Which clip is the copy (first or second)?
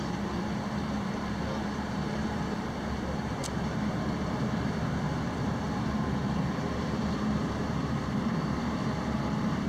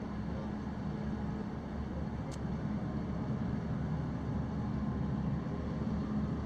first